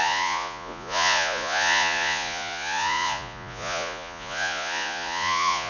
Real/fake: fake